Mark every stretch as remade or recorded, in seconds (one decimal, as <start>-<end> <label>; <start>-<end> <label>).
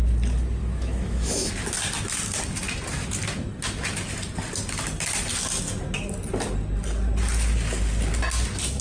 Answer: 0.0-0.6 recorded; 0.6-1.5 remade; 1.5-8.8 recorded